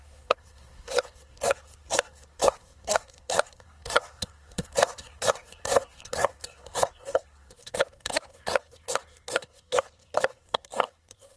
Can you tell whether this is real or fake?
fake